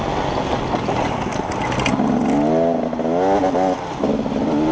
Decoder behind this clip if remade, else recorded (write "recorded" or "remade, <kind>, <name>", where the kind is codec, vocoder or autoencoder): recorded